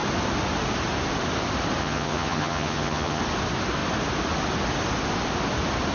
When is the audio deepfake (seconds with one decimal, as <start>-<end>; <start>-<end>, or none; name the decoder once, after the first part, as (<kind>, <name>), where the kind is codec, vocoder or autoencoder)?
1.8-3.2 (vocoder, HiFi-GAN)